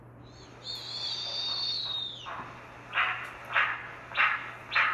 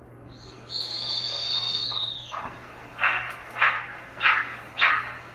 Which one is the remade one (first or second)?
second